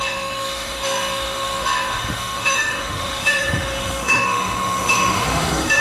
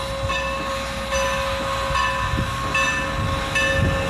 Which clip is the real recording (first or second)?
second